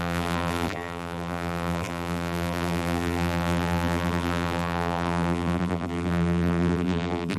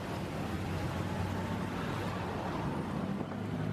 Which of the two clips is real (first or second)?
second